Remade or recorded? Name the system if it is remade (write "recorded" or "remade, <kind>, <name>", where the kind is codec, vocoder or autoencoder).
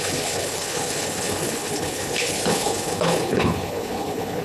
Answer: remade, codec, HILCodec